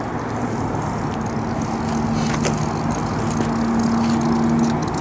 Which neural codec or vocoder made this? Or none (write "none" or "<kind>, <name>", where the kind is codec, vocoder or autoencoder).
none